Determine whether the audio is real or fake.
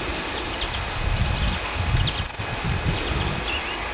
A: real